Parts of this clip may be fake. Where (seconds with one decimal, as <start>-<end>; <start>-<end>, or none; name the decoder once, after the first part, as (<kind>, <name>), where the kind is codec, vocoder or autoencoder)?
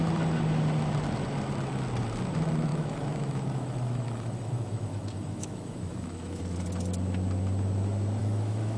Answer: 2.7-6.4 (autoencoder, DAC-VAE); 8.2-8.8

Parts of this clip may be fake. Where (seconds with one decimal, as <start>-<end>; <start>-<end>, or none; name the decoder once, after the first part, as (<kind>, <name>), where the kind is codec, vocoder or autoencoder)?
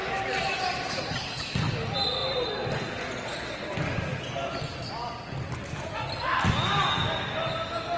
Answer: none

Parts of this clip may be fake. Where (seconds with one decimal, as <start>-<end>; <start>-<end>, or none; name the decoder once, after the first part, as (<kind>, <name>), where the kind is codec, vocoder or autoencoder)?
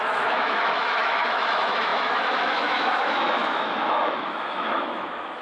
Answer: 0.0-5.4 (autoencoder, DAC-VAE)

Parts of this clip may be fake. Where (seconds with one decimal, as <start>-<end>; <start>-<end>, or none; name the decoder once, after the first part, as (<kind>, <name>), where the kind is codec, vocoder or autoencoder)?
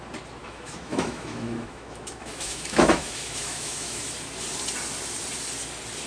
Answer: 0.4-4.0 (autoencoder, DAC-VAE)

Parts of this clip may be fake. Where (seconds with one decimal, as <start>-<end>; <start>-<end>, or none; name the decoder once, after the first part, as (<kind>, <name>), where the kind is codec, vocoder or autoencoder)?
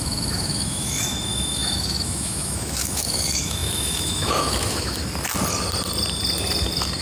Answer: 0.0-5.0 (autoencoder, DAC-VAE)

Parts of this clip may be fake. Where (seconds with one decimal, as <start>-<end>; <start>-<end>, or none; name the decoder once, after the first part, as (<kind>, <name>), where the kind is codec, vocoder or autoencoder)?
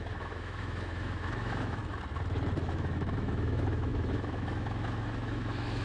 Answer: 0.0-1.8 (autoencoder, DAC-VAE); 2.6-5.8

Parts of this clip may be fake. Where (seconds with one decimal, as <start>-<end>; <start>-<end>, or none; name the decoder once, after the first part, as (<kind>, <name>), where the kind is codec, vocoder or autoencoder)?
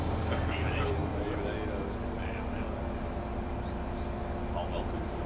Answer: none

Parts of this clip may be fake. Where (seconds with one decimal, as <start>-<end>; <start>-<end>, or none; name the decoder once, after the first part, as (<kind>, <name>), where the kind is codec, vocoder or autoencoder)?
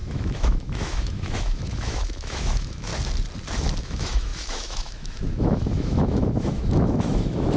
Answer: 0.0-2.9 (autoencoder, DAC-VAE); 3.8-7.6